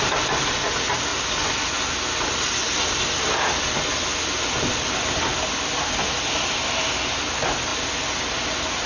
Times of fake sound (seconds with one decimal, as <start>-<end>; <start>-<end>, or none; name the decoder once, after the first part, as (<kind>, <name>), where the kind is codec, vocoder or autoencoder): none